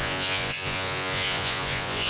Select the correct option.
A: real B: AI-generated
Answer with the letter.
B